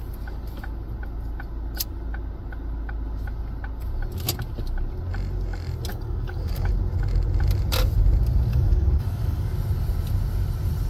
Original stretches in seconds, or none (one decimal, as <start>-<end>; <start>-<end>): 0.0-5.9; 6.7-8.5; 9.5-10.9